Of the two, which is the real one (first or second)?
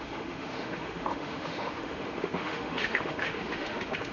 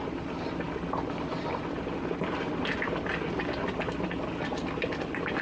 second